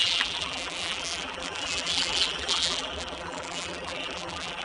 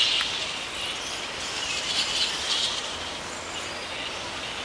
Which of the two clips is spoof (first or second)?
first